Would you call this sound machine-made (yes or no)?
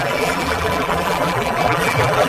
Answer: yes